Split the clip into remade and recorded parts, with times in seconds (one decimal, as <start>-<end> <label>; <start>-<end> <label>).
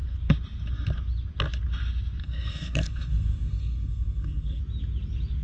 0.0-2.2 recorded; 2.2-4.6 remade; 4.6-5.4 recorded